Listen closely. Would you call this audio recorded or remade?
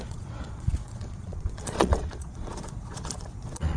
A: remade